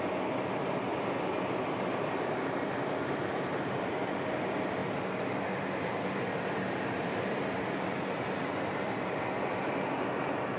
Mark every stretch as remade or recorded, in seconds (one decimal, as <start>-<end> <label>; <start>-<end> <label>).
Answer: 0.0-10.6 remade